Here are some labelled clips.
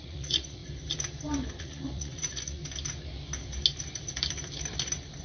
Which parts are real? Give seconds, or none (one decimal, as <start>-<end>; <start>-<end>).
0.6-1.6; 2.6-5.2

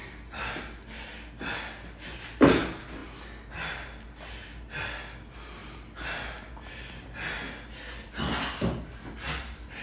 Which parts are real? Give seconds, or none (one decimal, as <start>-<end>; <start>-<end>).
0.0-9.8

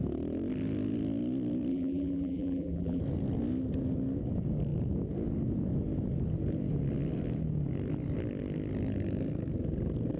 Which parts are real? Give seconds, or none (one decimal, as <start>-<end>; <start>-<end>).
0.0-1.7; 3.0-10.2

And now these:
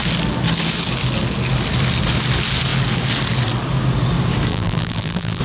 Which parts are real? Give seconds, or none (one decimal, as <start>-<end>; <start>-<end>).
0.0-4.5